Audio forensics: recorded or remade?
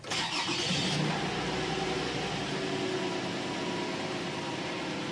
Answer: recorded